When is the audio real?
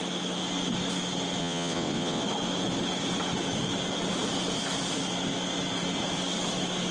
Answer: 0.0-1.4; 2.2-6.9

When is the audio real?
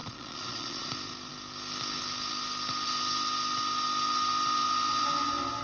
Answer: 0.9-5.6